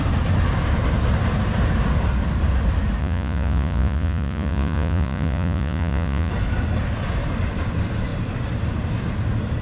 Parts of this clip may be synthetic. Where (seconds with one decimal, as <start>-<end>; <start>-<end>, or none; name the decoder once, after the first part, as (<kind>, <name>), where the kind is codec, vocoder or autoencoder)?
3.0-6.3 (vocoder, Vocos)